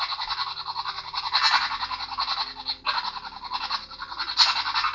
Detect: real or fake real